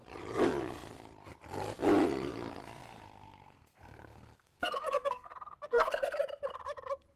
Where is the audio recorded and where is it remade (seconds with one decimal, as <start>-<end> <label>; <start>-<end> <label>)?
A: 0.0-2.8 recorded; 2.8-6.2 remade; 6.2-7.2 recorded